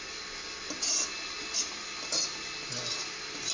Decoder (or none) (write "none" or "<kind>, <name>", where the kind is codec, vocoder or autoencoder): none